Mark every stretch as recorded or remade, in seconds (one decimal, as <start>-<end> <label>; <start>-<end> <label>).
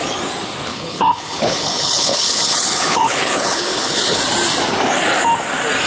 0.0-0.7 recorded; 0.7-4.2 remade; 4.2-5.9 recorded